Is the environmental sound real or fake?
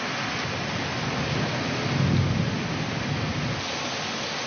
real